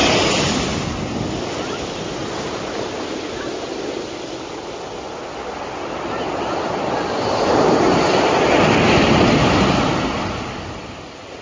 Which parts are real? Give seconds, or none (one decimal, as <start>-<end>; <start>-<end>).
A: 0.0-11.4